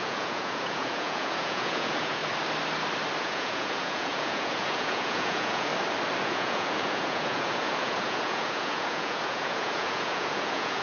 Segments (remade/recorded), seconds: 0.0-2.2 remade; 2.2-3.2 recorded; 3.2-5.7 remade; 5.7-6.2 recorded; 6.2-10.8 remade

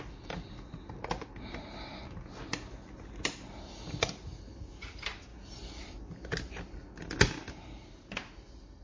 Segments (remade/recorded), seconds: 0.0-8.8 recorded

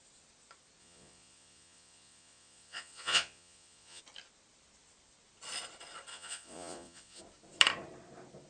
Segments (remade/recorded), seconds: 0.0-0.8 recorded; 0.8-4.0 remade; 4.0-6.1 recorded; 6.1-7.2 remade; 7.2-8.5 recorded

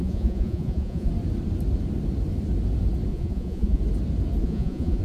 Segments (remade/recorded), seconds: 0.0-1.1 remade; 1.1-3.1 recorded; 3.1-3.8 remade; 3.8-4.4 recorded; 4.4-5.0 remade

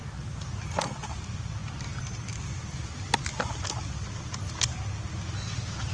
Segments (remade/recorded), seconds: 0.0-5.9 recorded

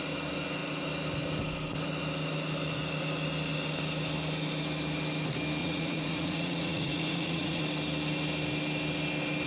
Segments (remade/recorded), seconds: 0.0-5.6 recorded; 5.6-7.6 remade; 7.6-9.5 recorded

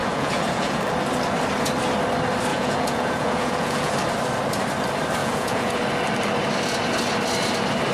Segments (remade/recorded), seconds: 0.0-0.8 remade; 0.8-2.5 recorded; 2.5-3.9 remade; 3.9-5.2 recorded; 5.2-5.8 remade; 5.8-7.9 recorded